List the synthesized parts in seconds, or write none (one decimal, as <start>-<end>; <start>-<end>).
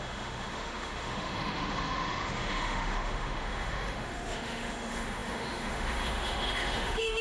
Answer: 0.0-7.2